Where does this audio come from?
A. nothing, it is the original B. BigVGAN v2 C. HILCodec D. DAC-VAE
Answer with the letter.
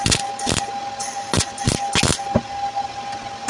A